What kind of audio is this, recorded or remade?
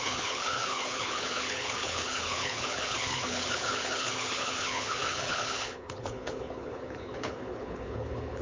remade